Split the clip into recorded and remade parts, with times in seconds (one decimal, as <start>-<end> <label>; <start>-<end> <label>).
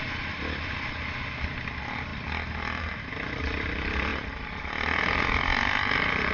0.0-6.3 recorded